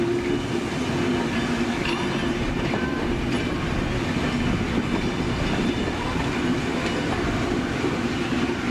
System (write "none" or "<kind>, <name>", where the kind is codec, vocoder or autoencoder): none